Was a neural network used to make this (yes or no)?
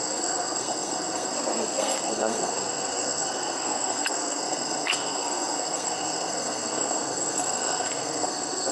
yes